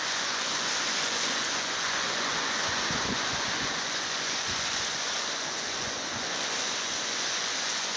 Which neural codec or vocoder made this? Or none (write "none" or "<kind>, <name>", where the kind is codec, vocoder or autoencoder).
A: vocoder, Vocos